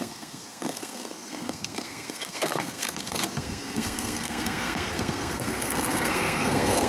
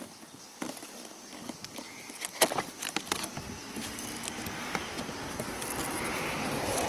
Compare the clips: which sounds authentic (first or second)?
second